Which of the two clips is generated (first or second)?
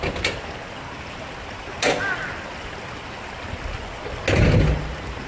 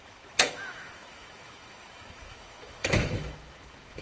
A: second